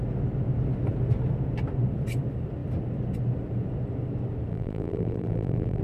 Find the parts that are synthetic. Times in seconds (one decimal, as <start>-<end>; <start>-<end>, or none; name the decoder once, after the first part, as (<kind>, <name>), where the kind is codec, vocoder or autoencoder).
4.5-5.8 (vocoder, BigVGAN v2)